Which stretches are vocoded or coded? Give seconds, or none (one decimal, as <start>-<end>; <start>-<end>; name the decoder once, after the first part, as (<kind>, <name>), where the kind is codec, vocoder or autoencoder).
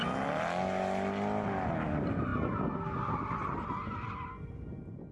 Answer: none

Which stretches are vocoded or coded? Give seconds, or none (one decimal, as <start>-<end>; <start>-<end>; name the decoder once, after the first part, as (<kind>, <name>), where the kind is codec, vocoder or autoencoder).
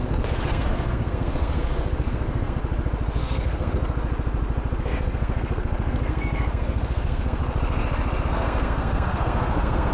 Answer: 0.0-2.6 (codec, SNAC); 3.2-3.8; 4.8-7.4; 8.2-9.9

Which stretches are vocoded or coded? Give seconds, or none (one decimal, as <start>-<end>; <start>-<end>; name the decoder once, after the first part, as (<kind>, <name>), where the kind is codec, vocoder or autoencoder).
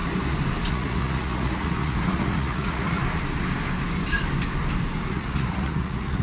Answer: 0.7-3.0 (vocoder, Vocos); 5.1-6.2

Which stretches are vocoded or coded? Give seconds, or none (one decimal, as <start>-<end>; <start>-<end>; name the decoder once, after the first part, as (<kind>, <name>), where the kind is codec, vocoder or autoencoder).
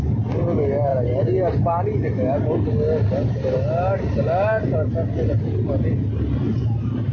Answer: none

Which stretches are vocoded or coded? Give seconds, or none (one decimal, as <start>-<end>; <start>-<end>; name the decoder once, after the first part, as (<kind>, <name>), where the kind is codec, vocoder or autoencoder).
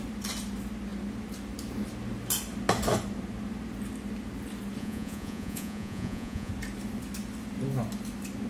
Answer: 4.8-6.5 (vocoder, Vocos)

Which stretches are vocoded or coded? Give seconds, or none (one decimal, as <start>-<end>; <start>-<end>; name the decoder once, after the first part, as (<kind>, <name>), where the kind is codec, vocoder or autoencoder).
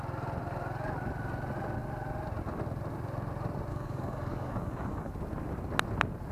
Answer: 3.7-5.1 (codec, DAC)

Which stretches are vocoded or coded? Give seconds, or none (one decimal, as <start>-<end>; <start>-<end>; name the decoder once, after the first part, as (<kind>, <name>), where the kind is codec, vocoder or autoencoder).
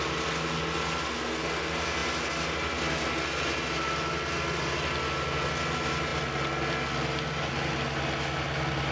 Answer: none